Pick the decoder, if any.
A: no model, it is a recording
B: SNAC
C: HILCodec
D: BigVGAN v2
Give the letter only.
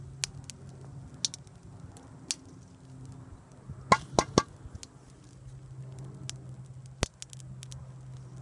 A